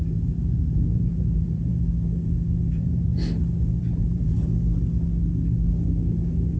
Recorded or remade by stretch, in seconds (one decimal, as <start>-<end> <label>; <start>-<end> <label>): 0.0-1.7 remade; 1.7-2.7 recorded; 2.7-3.1 remade; 3.1-3.8 recorded; 3.8-4.5 remade; 4.5-6.6 recorded